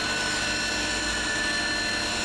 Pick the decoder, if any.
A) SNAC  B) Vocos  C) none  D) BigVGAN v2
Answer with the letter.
C